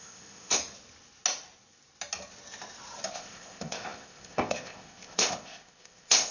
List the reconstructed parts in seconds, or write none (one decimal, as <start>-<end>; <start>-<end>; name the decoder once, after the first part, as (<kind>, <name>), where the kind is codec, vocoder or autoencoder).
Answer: 0.0-0.6 (codec, ZipCodec); 3.1-6.3